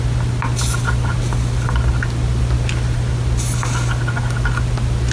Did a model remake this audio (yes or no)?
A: no